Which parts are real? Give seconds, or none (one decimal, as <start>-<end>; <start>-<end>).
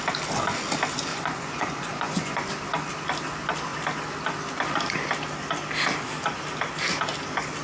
0.0-1.1; 2.5-7.6